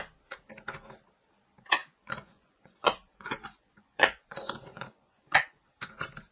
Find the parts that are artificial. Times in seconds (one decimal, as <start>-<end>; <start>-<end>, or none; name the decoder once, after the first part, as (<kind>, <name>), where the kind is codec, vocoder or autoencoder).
1.8-5.6 (vocoder, Vocos)

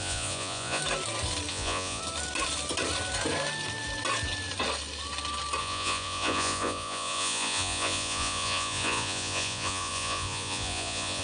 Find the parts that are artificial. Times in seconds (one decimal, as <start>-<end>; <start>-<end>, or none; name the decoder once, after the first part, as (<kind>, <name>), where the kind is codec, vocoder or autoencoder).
0.0-0.8 (vocoder, Vocos); 1.5-2.0; 5.6-11.2

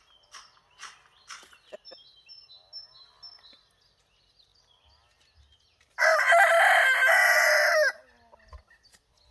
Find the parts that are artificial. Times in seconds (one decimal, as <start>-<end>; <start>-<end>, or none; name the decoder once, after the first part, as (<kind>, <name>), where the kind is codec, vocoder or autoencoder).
none

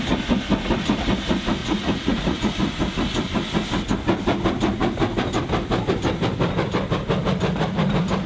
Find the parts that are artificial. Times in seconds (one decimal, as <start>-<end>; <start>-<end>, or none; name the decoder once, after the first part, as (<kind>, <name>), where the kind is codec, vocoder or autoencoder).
1.6-2.5 (vocoder, Vocos)

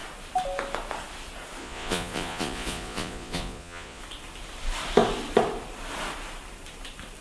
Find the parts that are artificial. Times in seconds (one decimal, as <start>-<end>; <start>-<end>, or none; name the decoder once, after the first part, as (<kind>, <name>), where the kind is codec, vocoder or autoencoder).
1.6-4.0 (vocoder, Vocos)

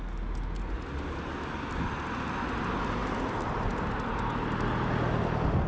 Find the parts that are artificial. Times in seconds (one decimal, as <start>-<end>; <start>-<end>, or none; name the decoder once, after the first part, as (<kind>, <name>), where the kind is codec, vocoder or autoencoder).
none

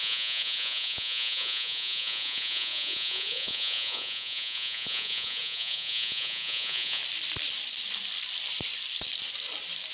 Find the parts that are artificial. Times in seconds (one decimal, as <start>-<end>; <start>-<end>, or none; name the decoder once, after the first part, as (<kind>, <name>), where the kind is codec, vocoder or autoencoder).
0.0-7.0 (vocoder, Vocos)

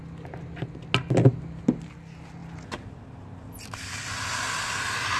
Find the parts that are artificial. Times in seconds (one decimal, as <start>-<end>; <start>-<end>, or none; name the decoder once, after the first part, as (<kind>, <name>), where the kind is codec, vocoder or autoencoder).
none